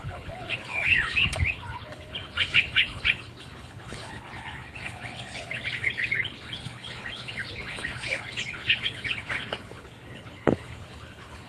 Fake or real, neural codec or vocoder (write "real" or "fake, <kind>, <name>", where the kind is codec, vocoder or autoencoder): fake, codec, HILCodec